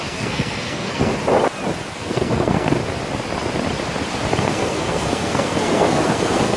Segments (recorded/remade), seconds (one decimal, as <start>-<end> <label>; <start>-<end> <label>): 0.0-1.1 remade; 1.1-1.9 recorded; 1.9-2.8 remade; 2.8-4.4 recorded; 4.4-6.6 remade

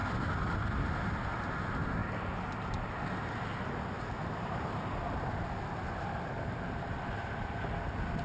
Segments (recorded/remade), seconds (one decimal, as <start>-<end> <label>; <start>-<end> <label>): 0.0-8.2 recorded

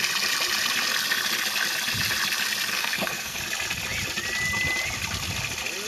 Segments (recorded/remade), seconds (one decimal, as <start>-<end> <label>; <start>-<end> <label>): 0.0-2.7 recorded; 2.7-3.4 remade; 3.4-5.9 recorded

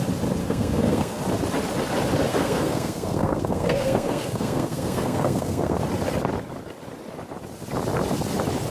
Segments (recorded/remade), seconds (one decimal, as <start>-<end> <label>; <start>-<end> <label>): 0.0-0.4 recorded; 0.4-1.2 remade; 1.2-2.3 recorded; 2.3-5.8 remade; 5.8-8.7 recorded

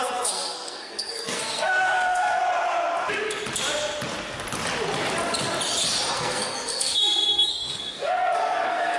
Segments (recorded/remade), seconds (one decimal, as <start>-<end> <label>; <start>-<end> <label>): 0.0-2.4 remade; 2.4-6.1 recorded; 6.1-9.0 remade